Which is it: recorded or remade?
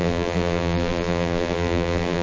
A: remade